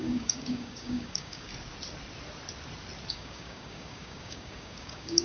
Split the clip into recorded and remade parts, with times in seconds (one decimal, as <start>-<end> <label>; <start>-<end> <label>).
0.0-1.5 remade; 1.5-3.1 recorded; 3.1-5.2 remade